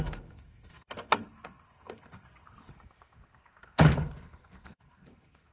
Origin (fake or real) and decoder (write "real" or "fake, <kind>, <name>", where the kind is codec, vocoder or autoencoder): fake, codec, SNAC